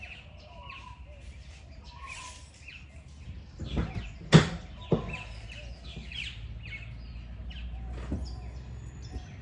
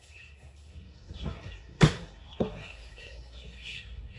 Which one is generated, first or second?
second